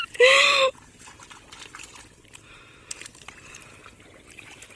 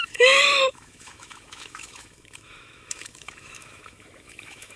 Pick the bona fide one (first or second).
first